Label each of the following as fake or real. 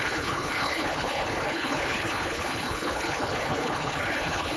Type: fake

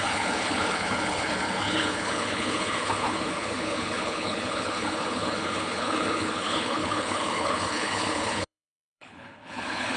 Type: fake